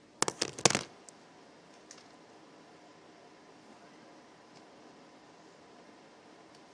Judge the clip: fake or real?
real